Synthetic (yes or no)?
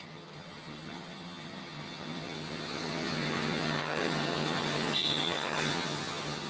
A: yes